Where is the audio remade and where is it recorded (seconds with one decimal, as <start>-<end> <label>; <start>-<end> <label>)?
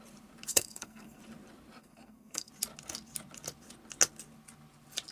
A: 0.0-0.5 recorded; 0.5-1.2 remade; 1.2-1.8 recorded; 1.8-2.5 remade; 2.5-5.1 recorded